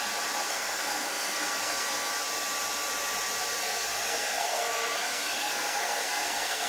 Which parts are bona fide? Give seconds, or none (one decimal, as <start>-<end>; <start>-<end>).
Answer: 0.0-0.4; 2.1-3.6